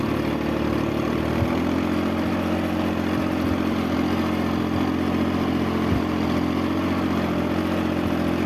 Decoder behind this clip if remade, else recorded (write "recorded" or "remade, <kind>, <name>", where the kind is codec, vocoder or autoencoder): recorded